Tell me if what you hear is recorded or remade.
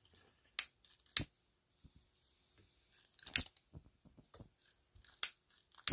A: recorded